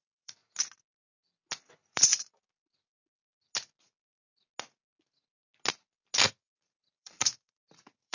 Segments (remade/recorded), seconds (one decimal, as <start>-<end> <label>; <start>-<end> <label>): 0.0-0.4 remade; 0.4-1.6 recorded; 1.6-2.1 remade; 2.1-6.3 recorded; 6.3-8.1 remade